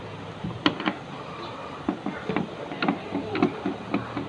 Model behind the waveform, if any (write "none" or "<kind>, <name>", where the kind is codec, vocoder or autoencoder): none